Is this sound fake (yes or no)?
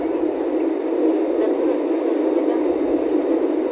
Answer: no